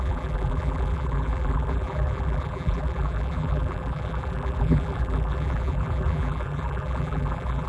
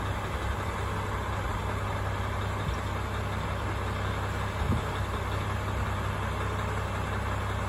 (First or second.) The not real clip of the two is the first